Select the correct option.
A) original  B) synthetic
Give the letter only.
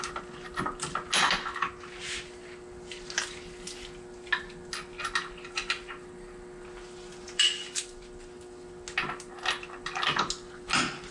A